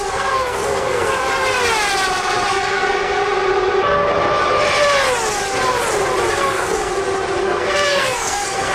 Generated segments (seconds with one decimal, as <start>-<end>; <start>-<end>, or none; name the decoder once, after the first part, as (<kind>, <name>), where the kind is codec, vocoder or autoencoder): 0.0-1.3 (codec, SNAC); 2.5-3.2; 6.3-6.9; 7.4-8.7